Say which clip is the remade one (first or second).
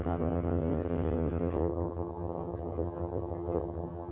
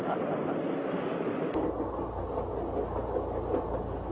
first